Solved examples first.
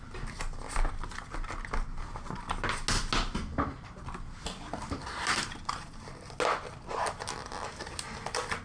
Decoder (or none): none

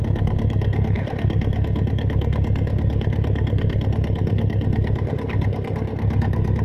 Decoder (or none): codec, SNAC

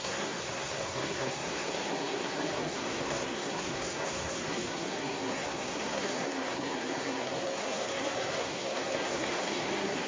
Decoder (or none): codec, SNAC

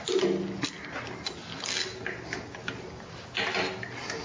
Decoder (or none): none